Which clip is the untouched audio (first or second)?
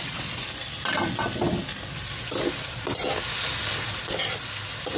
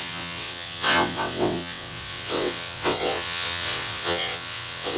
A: first